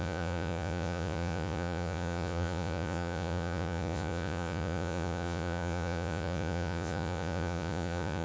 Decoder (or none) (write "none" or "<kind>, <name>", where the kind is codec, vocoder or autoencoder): vocoder, Vocos